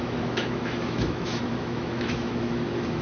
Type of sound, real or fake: fake